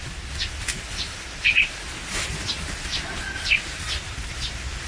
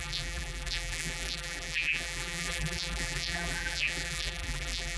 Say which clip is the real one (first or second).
first